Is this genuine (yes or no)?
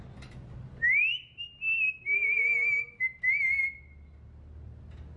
yes